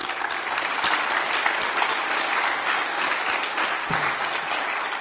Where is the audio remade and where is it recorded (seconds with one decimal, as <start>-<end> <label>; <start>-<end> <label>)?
0.0-1.9 recorded; 1.9-3.1 remade; 3.1-3.8 recorded; 3.8-4.3 remade; 4.3-5.0 recorded